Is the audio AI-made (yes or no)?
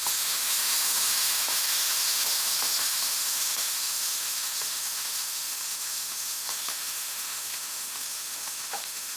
yes